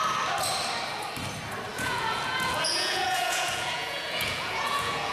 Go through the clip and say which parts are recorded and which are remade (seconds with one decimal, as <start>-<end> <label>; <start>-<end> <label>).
0.0-1.7 recorded; 1.7-5.1 remade